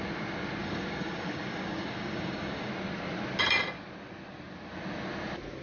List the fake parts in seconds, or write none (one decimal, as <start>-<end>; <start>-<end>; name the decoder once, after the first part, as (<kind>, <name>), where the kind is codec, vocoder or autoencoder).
0.6-2.7 (codec, DAC)